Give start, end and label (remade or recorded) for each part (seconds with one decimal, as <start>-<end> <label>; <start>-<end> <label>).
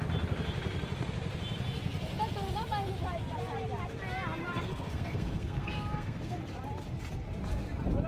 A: 0.0-4.4 recorded; 4.4-6.4 remade; 6.4-8.1 recorded